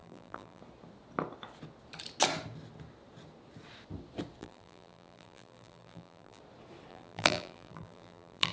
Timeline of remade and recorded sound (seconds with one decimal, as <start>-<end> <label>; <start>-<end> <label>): 0.0-0.6 remade; 0.6-4.4 recorded; 4.4-6.4 remade; 6.4-6.9 recorded; 6.9-8.5 remade

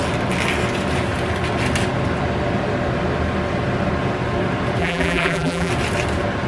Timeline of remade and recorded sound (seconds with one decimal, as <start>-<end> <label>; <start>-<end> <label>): 0.0-4.8 recorded; 4.8-5.7 remade; 5.7-6.5 recorded